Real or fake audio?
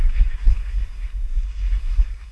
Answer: fake